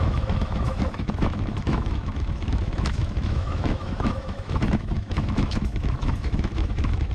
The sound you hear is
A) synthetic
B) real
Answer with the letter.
A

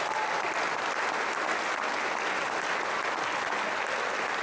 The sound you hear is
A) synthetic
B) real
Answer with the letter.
B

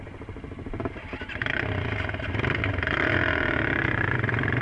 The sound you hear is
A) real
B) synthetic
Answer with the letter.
A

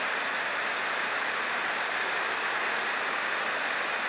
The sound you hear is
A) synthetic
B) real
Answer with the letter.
B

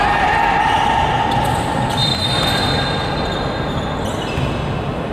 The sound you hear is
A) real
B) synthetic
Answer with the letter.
A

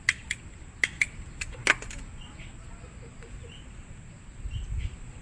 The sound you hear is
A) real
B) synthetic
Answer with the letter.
A